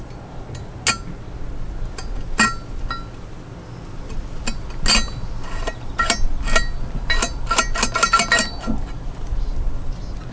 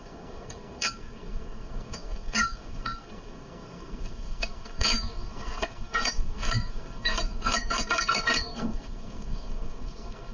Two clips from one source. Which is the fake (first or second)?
second